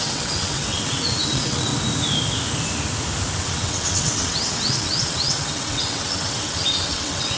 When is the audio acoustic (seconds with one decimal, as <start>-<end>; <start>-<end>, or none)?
1.7-3.4